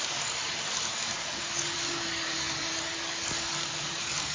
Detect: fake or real fake